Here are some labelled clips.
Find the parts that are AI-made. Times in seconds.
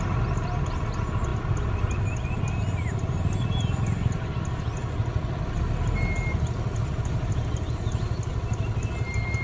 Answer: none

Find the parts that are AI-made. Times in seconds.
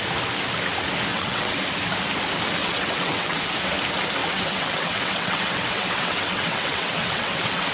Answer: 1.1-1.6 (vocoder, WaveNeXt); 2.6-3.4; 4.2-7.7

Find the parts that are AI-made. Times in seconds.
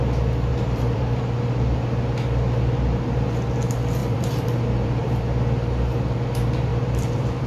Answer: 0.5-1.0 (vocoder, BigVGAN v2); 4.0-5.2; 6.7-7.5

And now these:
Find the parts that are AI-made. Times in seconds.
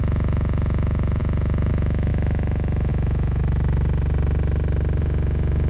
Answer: 0.0-3.4 (vocoder, Vocos); 5.0-5.7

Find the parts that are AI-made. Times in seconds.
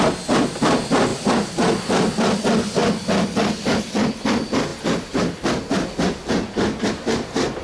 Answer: none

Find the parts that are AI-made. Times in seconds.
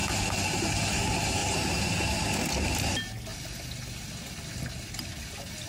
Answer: 0.0-0.5 (vocoder, BigVGAN v2); 1.4-1.9; 3.3-4.1